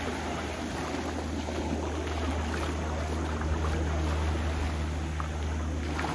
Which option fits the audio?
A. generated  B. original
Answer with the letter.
B